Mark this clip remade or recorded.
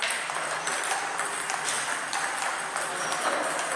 recorded